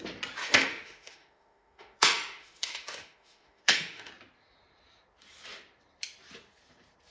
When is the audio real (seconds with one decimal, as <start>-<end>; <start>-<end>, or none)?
0.0-0.4; 4.1-7.1